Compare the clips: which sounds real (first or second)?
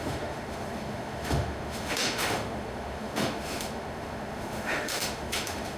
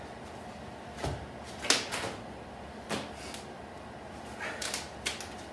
second